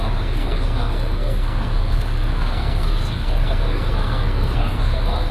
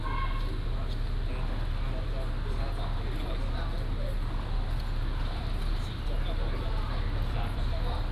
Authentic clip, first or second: second